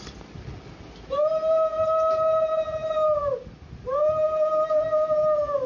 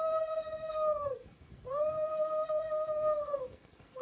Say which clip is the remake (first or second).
second